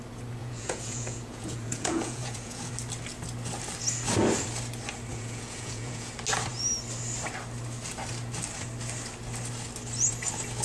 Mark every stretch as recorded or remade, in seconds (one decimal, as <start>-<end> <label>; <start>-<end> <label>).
0.0-0.4 recorded; 0.4-2.7 remade; 2.7-5.1 recorded; 5.1-6.1 remade; 6.1-10.6 recorded